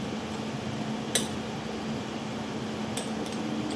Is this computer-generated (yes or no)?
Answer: no